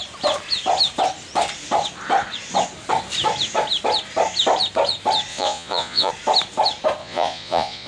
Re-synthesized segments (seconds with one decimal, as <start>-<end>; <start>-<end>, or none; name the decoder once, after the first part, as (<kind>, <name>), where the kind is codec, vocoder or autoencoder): 5.3-6.1 (vocoder, Vocos); 7.0-7.9